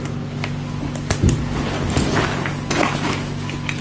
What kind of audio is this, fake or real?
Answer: real